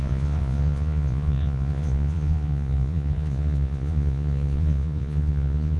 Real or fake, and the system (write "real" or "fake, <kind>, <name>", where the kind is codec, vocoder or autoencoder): fake, vocoder, Vocos